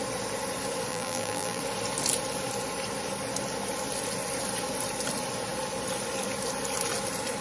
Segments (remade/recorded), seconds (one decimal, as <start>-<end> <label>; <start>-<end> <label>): 0.0-0.9 recorded; 0.9-1.6 remade; 1.6-7.4 recorded